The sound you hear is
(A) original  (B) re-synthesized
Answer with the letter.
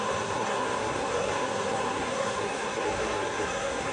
B